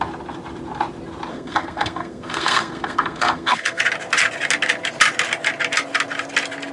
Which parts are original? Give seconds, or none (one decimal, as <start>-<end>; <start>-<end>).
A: 0.0-1.3; 3.8-6.7